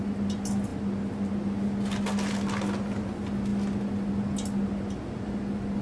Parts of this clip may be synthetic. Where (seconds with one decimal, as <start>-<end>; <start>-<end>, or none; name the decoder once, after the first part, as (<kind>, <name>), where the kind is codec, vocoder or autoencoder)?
none